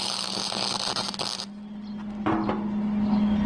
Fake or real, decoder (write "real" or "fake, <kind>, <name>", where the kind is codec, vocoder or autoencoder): real